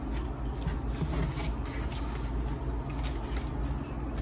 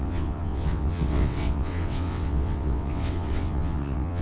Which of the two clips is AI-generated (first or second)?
second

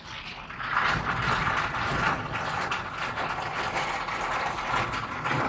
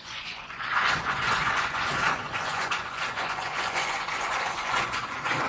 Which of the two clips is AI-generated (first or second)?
second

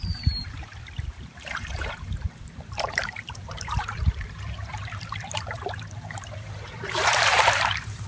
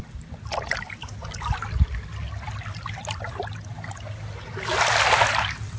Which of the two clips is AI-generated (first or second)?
first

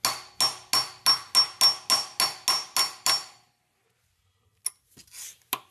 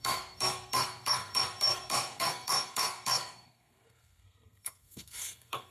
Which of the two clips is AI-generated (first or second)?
second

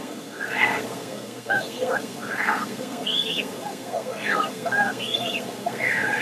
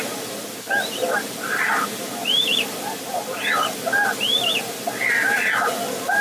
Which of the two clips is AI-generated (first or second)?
first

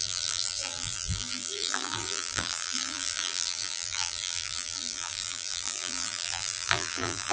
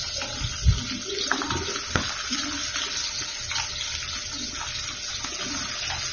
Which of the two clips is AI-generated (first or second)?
first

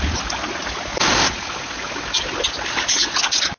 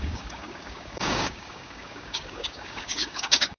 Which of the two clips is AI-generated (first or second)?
second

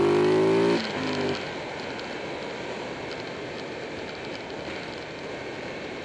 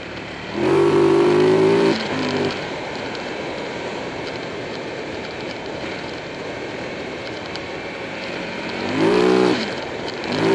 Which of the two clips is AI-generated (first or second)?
second